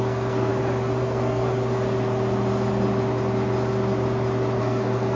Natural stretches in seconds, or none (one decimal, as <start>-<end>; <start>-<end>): 0.5-1.0; 1.5-4.6